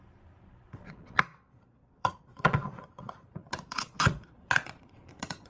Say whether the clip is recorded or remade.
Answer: remade